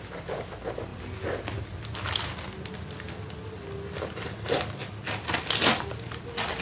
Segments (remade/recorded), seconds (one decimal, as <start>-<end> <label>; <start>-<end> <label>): 0.0-6.6 recorded